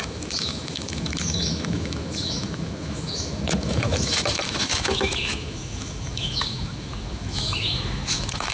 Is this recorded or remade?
remade